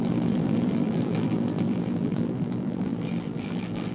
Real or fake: fake